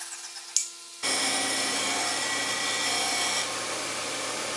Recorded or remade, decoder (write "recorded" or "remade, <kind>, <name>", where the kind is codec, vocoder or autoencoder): recorded